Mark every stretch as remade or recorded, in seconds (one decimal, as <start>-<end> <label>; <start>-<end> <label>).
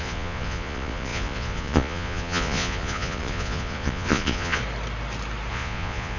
0.0-4.6 remade; 4.6-5.5 recorded; 5.5-6.2 remade